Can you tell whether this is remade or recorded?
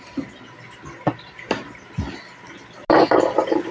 recorded